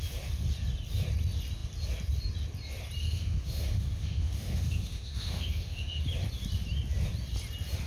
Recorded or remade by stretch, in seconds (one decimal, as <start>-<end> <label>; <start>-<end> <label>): 0.0-3.0 recorded; 3.0-6.0 remade; 6.0-7.9 recorded